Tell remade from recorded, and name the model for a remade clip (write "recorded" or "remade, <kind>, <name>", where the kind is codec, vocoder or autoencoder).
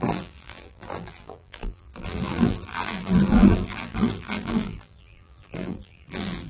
remade, vocoder, BigVGAN v2